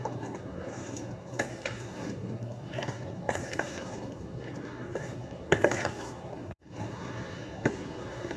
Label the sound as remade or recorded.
remade